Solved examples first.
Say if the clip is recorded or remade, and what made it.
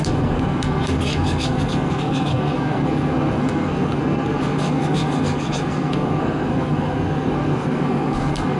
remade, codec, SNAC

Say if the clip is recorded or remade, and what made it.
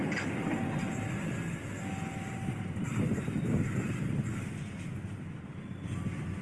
recorded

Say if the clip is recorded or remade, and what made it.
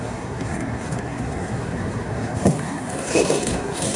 remade, codec, SNAC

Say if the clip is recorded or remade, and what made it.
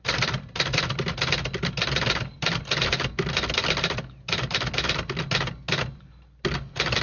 recorded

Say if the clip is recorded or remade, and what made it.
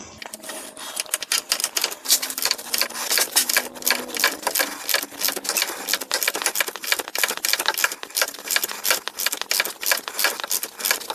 recorded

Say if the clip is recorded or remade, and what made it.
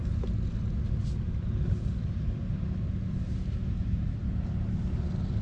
recorded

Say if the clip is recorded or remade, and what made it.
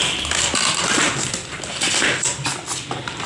recorded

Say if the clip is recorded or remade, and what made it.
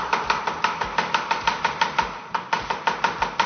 recorded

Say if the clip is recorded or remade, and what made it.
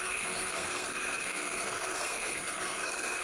remade, codec, SNAC